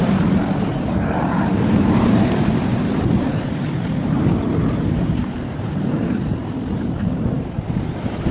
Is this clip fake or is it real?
fake